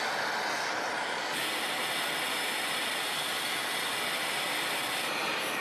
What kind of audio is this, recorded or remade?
recorded